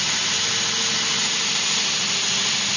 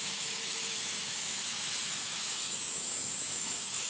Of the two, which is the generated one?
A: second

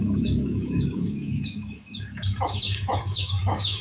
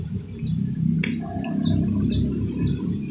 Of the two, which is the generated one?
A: first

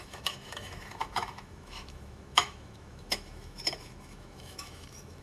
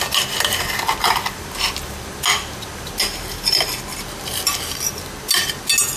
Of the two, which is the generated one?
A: first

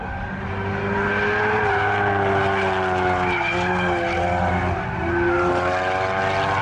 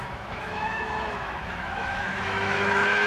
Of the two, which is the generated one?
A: second